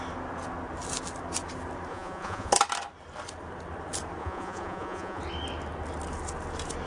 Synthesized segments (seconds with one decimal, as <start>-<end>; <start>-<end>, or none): 1.9-2.5; 4.2-5.2